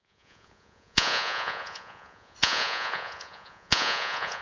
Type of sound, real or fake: fake